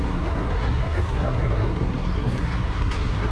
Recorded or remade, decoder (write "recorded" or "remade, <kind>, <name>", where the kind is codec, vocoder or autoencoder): remade, codec, SNAC